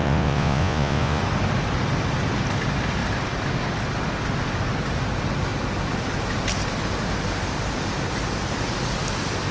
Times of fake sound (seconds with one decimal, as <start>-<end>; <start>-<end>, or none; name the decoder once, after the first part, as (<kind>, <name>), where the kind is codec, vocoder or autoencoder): 0.0-1.2 (vocoder, Vocos)